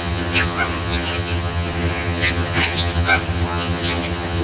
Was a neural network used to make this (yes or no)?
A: yes